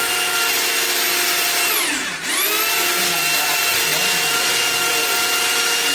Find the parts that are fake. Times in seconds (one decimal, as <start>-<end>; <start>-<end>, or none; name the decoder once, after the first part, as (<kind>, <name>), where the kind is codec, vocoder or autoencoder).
none

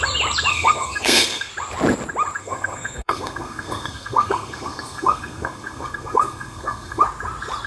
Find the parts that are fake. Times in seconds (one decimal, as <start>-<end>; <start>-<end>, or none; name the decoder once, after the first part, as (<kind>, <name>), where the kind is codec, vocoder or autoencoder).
0.5-1.5 (codec, SNAC); 2.4-7.0

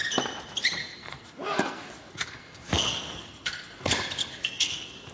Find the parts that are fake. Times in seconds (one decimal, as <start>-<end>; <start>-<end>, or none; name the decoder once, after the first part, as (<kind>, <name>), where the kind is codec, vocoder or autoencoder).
0.8-3.9 (codec, SNAC); 4.3-5.1

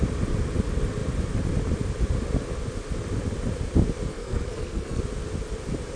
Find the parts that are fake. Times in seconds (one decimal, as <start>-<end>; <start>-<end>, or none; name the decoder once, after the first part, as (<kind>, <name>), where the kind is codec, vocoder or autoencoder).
4.1-5.0 (codec, SNAC)

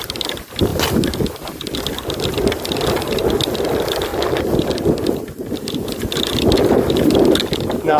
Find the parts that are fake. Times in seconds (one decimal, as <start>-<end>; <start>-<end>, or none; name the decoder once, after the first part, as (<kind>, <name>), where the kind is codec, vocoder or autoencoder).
none

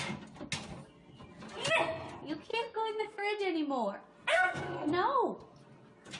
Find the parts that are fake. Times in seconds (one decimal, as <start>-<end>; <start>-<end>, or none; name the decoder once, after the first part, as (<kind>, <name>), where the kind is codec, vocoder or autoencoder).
2.5-3.4 (codec, SNAC); 4.3-4.9

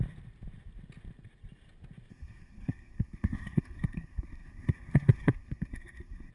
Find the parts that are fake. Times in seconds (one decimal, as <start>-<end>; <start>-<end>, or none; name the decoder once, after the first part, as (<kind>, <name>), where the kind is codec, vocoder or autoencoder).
2.1-6.3 (codec, SNAC)

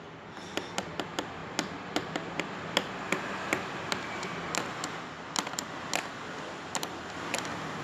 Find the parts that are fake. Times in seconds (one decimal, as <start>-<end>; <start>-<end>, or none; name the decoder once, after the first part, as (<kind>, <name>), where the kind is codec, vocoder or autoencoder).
none